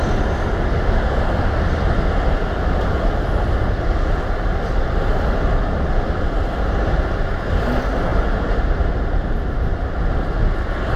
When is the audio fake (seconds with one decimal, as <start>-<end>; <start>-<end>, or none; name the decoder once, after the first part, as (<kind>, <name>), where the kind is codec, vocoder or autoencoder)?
none